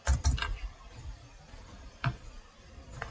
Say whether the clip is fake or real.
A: real